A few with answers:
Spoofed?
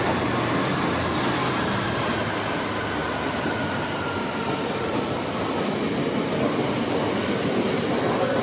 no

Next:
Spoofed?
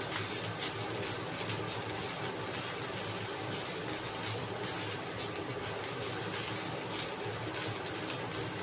no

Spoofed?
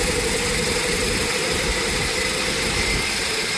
yes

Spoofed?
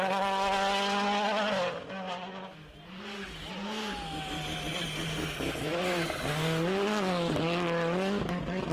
no